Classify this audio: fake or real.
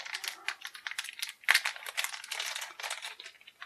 real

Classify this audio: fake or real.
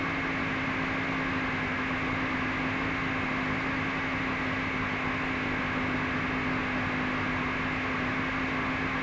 real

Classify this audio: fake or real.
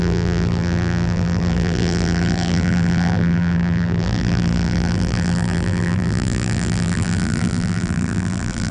fake